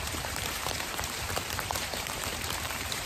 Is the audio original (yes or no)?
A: no